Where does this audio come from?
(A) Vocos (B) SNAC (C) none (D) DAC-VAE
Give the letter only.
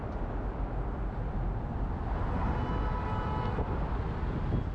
C